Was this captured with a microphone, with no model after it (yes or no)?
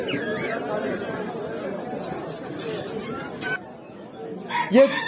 yes